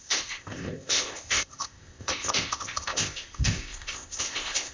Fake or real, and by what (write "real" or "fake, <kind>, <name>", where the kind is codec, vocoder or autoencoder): fake, codec, ZipCodec